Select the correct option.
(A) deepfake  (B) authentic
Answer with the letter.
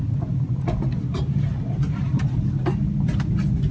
B